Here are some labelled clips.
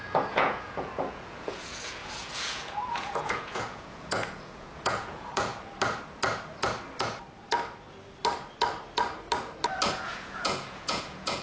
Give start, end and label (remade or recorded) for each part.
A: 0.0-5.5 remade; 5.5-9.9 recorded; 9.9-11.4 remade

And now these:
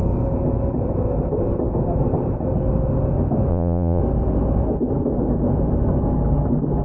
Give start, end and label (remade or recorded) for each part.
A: 0.0-3.5 recorded; 3.5-4.0 remade; 4.0-6.8 recorded

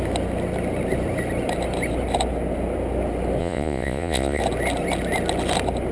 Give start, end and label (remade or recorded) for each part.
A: 0.0-3.4 recorded; 3.4-4.4 remade; 4.4-5.9 recorded

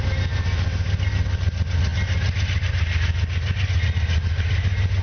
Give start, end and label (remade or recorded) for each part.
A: 0.0-5.0 recorded

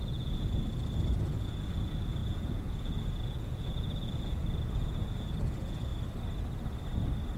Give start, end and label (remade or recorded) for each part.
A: 0.0-0.6 remade; 0.6-1.2 recorded; 1.2-5.9 remade; 5.9-7.4 recorded

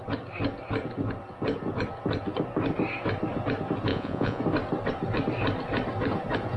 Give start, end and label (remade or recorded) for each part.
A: 0.0-3.9 recorded; 3.9-4.4 remade; 4.4-6.6 recorded

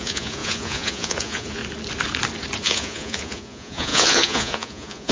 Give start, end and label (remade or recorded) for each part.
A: 0.0-1.6 remade; 1.6-2.6 recorded; 2.6-5.1 remade

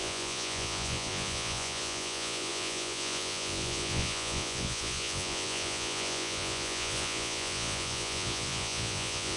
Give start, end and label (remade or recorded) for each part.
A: 0.0-9.4 remade